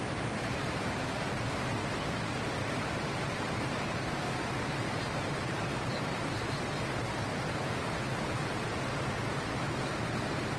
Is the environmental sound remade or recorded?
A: remade